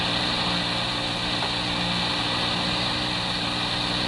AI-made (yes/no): no